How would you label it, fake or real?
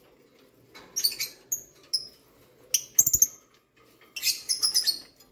real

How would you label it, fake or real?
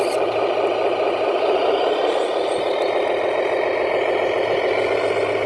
real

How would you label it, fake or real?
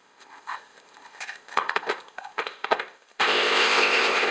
fake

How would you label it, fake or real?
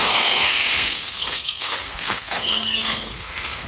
fake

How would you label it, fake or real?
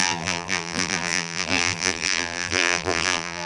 fake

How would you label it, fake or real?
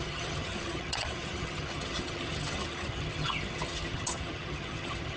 fake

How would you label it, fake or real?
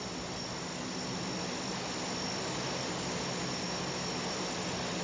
real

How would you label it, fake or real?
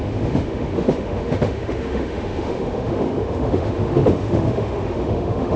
fake